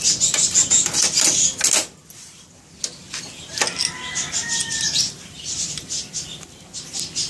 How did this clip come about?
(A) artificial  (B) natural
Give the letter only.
B